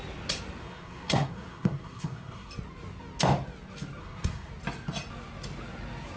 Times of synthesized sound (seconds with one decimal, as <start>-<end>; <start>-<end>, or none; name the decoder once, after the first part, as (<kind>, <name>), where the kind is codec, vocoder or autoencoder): 0.6-2.5 (codec, SNAC); 4.0-4.5